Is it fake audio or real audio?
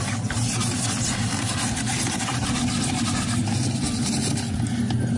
real